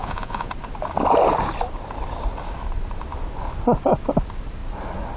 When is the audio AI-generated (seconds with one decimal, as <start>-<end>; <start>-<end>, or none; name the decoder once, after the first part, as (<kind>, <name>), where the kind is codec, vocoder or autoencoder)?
0.0-0.5 (vocoder, Vocos)